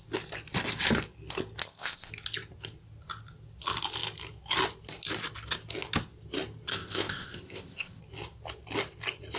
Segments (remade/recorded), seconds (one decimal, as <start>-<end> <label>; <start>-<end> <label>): 0.0-1.6 recorded; 1.6-2.1 remade; 2.1-6.7 recorded; 6.7-8.0 remade; 8.0-9.4 recorded